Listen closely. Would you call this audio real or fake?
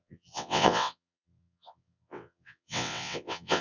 fake